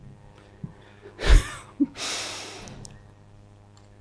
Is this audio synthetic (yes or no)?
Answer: no